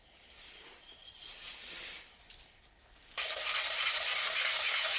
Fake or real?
real